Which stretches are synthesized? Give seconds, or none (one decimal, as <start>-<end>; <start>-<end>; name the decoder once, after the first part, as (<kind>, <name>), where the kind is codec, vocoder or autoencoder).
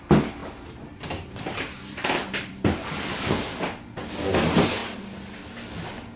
0.4-3.6 (vocoder, BigVGAN v2)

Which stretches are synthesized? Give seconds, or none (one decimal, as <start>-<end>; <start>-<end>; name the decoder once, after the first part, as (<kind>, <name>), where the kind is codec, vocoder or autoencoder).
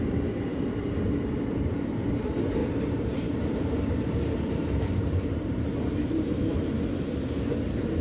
2.6-6.7 (vocoder, BigVGAN v2)